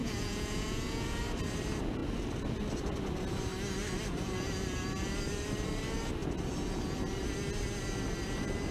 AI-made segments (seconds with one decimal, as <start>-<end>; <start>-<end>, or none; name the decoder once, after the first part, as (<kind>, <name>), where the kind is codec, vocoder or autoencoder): 0.0-1.2 (vocoder, Vocos)